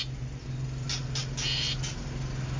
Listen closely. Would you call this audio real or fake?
real